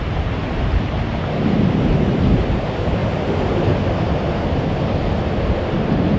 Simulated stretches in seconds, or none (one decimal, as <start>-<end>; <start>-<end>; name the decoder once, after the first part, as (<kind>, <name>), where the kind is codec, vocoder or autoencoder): 0.0-0.4 (vocoder, BigVGAN v2); 1.5-3.0

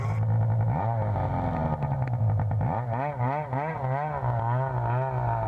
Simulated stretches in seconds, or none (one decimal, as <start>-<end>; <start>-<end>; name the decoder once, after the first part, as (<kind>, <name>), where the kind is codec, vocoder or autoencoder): none

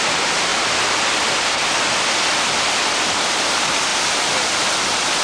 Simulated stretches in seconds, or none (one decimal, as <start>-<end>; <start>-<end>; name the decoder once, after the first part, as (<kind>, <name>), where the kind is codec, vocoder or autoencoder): 0.0-0.5 (vocoder, BigVGAN v2); 3.3-3.9; 4.8-5.2

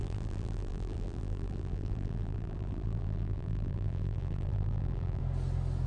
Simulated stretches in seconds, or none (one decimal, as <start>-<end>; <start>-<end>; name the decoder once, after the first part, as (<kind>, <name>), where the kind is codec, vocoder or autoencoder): 0.0-5.2 (vocoder, BigVGAN v2)

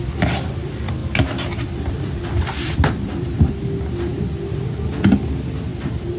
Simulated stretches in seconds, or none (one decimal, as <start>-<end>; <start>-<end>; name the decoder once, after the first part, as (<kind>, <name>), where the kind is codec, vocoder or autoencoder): 1.0-3.5 (vocoder, BigVGAN v2); 5.7-6.2

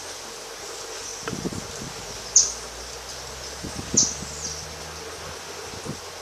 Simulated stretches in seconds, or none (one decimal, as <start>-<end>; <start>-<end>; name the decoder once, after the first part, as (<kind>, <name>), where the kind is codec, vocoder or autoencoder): none